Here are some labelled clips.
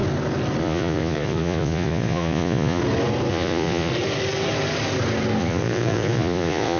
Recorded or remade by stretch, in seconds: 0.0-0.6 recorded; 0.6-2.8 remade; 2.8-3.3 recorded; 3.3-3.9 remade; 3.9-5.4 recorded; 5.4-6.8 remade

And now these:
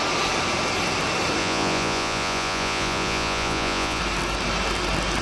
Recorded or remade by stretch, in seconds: 0.0-1.4 recorded; 1.4-4.0 remade; 4.0-5.2 recorded

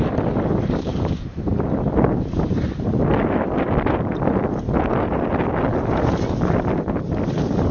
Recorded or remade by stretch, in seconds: 0.0-7.7 recorded

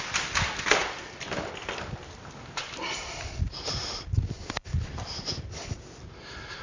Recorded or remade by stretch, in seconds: 0.0-6.6 recorded

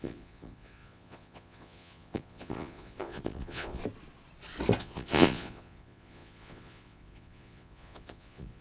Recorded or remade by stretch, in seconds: 0.0-3.8 remade; 3.8-4.8 recorded; 4.8-8.6 remade

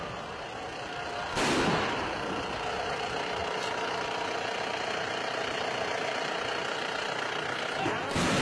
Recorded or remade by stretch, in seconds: 0.0-8.4 recorded

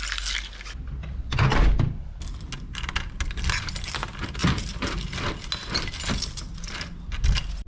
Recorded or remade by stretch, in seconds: 0.0-7.7 recorded

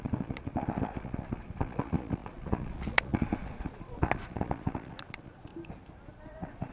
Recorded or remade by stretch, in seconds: 0.0-5.5 remade; 5.5-6.1 recorded; 6.1-6.7 remade